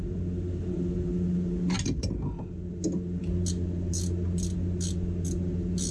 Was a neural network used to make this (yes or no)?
no